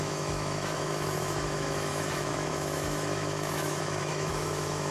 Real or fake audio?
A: fake